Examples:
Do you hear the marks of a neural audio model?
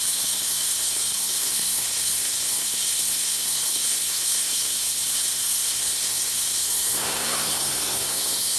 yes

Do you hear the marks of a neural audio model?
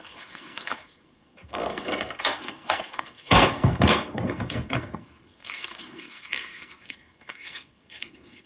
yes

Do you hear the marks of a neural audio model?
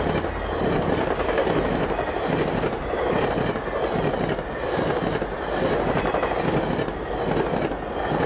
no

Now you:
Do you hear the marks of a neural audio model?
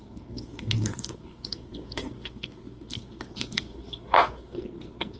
yes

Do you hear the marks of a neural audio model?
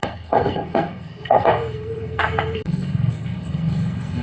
yes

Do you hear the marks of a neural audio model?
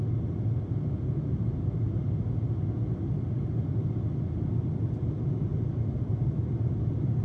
no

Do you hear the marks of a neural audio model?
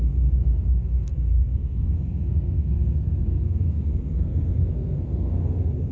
yes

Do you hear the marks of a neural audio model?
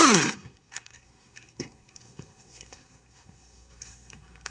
yes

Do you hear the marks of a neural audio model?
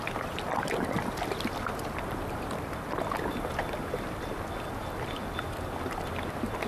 no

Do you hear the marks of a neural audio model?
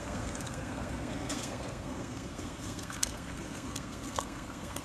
yes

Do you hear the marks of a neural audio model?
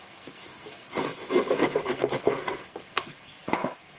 yes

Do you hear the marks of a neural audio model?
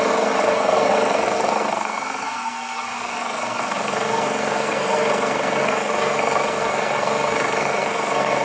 yes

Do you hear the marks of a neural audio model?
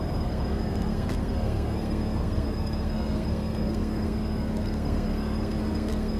yes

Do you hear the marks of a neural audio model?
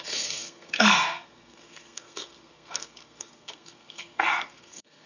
yes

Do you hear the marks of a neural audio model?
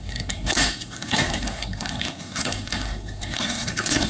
yes